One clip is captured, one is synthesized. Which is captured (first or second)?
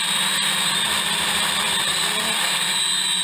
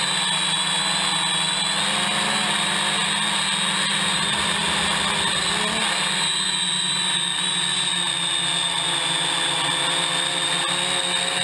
second